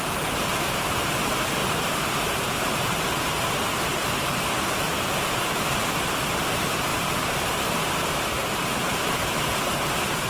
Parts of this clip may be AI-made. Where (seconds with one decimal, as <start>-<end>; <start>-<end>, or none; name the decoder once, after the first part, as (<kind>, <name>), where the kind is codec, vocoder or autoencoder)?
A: 0.0-1.6 (vocoder, BigVGAN v2); 2.2-10.3